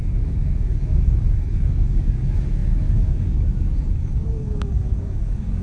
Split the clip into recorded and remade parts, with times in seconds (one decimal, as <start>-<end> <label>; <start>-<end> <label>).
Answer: 0.0-5.6 remade

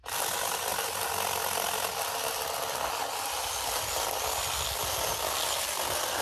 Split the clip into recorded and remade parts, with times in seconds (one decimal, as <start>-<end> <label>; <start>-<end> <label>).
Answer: 0.0-6.2 recorded

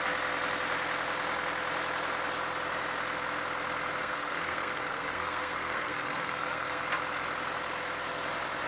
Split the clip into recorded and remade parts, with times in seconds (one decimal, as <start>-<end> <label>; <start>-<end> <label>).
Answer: 0.0-4.0 recorded; 4.0-6.8 remade; 6.8-8.7 recorded

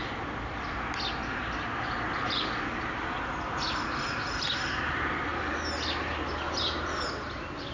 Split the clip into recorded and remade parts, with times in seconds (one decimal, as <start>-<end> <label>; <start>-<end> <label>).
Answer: 0.0-7.7 recorded

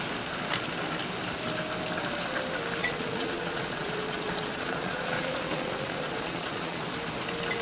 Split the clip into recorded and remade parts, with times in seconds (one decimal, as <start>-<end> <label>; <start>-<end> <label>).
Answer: 0.0-2.8 recorded; 2.8-6.8 remade; 6.8-7.6 recorded

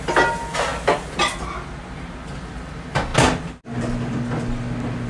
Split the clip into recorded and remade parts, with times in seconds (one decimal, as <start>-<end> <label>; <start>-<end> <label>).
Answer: 0.0-5.1 recorded

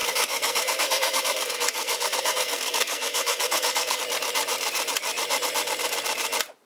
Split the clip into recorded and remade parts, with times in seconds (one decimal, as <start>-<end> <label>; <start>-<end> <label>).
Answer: 0.0-4.0 remade; 4.0-6.7 recorded

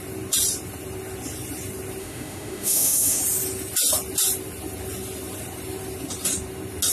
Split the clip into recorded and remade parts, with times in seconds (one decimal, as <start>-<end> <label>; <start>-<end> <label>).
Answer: 0.0-2.0 recorded; 2.0-3.2 remade; 3.2-6.9 recorded